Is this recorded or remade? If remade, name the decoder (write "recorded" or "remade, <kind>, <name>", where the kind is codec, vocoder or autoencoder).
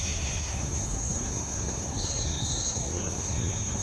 remade, codec, SNAC